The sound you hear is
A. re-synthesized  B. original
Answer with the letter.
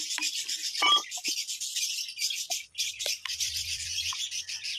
B